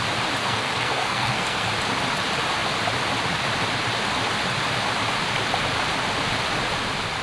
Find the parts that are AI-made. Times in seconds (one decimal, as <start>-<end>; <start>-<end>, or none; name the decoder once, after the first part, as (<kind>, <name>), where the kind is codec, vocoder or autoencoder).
0.4-1.7 (codec, SNAC)